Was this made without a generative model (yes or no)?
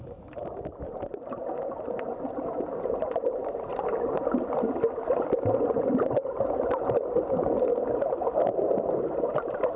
yes